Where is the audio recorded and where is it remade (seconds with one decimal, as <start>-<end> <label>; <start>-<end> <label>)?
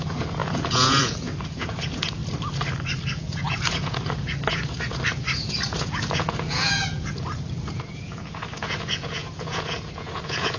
0.0-2.2 remade; 2.2-3.1 recorded; 3.1-10.6 remade